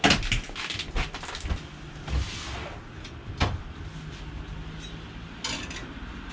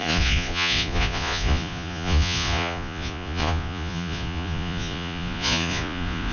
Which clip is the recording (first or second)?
first